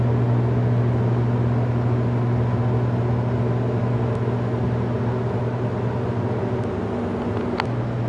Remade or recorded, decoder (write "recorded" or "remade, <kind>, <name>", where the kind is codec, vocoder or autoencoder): recorded